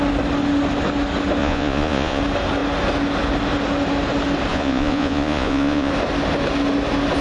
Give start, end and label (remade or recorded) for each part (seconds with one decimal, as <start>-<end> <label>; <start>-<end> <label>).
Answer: 0.0-1.4 recorded; 1.4-2.2 remade; 2.2-4.5 recorded; 4.5-5.9 remade; 5.9-7.2 recorded

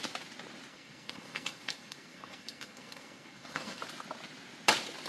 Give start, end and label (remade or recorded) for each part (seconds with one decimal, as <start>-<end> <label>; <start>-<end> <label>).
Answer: 0.0-0.7 recorded; 0.7-3.8 remade; 3.8-5.1 recorded

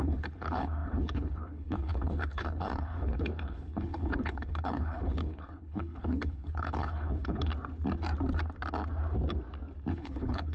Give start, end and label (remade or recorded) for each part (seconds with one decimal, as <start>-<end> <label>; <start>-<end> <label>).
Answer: 0.0-7.5 remade; 7.5-9.9 recorded; 9.9-10.5 remade

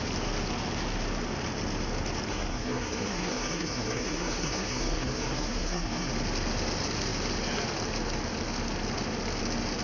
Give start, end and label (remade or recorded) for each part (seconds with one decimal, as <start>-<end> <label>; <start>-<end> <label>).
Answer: 0.0-2.3 recorded; 2.3-6.1 remade; 6.1-9.8 recorded

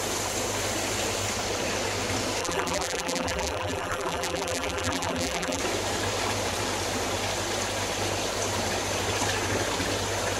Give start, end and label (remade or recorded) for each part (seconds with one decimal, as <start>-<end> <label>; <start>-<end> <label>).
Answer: 0.0-2.4 recorded; 2.4-5.6 remade; 5.6-10.4 recorded

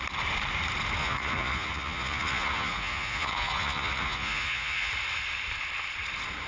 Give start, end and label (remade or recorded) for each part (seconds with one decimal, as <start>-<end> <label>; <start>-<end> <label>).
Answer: 0.0-1.0 recorded; 1.0-4.9 remade; 4.9-6.5 recorded

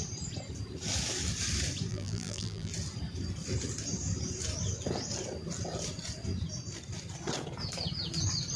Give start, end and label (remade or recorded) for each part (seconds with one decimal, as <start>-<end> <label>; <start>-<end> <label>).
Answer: 0.0-1.9 recorded; 1.9-2.7 remade; 2.7-8.6 recorded